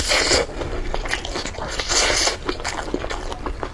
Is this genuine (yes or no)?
yes